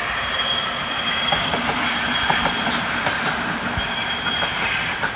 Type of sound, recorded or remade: remade